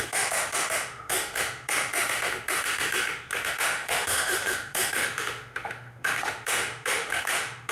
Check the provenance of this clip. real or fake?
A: fake